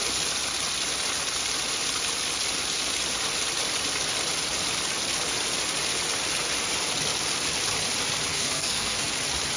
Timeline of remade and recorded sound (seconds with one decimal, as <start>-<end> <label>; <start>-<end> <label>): 0.0-8.3 recorded; 8.3-9.1 remade; 9.1-9.6 recorded